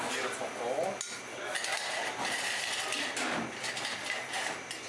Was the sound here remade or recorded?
recorded